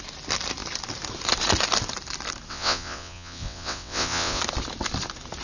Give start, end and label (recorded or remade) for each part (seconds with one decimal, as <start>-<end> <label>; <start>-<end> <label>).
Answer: 0.0-2.5 recorded; 2.5-4.4 remade; 4.4-5.4 recorded